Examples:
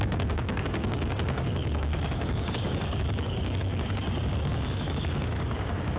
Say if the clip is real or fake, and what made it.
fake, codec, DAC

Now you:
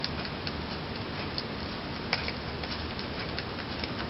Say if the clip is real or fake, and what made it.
real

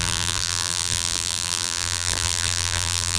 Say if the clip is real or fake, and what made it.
fake, vocoder, BigVGAN v2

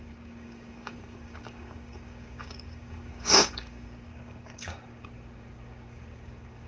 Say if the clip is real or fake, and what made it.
fake, codec, DAC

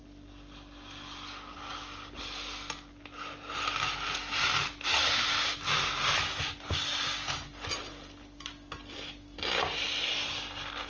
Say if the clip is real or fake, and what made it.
real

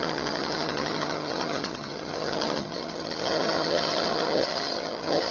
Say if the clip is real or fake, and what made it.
fake, vocoder, HiFi-GAN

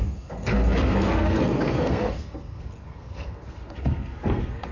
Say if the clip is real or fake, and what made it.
fake, codec, SNAC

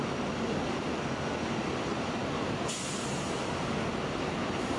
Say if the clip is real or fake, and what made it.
real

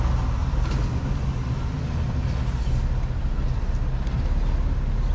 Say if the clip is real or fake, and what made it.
real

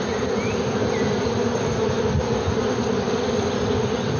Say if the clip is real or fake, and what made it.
real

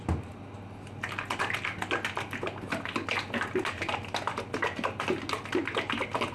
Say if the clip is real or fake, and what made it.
real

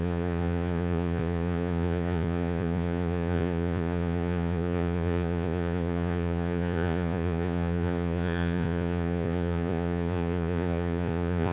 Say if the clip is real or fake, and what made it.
fake, vocoder, Vocos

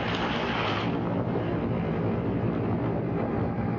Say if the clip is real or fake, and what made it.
real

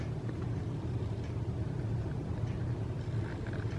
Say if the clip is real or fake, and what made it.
fake, vocoder, BigVGAN v2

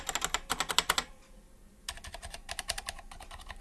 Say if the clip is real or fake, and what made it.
real